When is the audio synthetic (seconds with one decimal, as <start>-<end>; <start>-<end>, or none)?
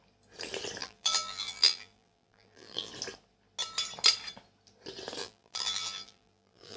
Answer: 0.8-2.9; 5.2-6.8